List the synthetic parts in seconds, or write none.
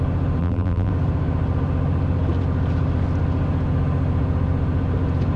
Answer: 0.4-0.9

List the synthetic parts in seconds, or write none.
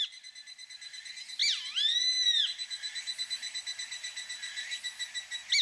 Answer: none